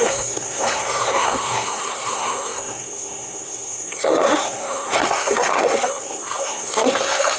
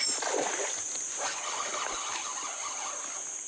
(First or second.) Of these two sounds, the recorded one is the second